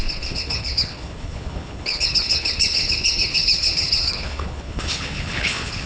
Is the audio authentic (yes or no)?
no